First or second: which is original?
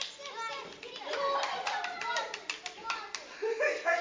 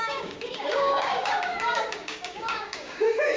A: first